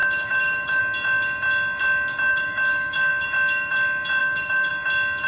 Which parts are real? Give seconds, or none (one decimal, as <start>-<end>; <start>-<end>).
0.8-2.3; 3.1-4.2; 4.7-5.3